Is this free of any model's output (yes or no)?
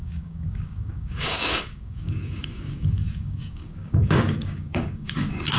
no